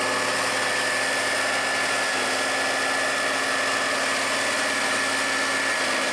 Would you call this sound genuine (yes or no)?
yes